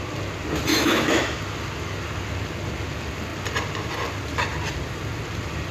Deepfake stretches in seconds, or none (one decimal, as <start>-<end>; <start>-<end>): 0.7-1.4

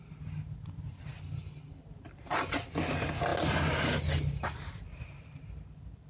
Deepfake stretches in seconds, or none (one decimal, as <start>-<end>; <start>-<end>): none

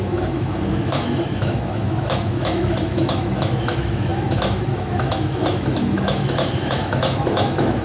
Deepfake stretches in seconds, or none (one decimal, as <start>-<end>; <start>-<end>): 0.0-7.8